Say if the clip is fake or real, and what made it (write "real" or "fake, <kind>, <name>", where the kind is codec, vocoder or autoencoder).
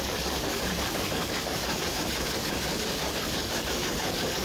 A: fake, codec, DAC